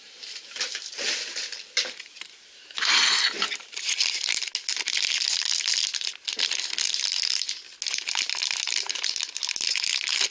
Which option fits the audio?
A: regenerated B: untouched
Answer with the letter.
B